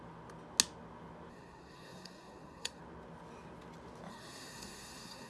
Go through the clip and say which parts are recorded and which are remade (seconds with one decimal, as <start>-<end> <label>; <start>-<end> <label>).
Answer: 0.0-1.3 recorded; 1.3-2.8 remade; 2.8-4.1 recorded; 4.1-5.3 remade

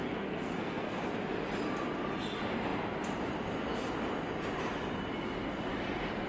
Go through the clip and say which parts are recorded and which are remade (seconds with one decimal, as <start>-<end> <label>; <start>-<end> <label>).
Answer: 0.0-1.0 remade; 1.0-6.3 recorded

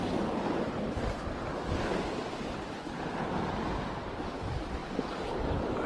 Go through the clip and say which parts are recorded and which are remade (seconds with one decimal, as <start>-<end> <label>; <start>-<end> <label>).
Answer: 0.0-5.9 recorded